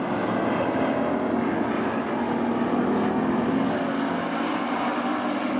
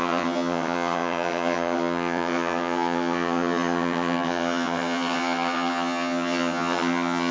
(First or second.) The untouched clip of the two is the first